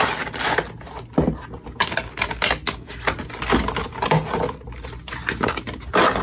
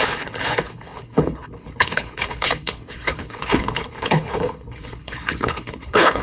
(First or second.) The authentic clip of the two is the first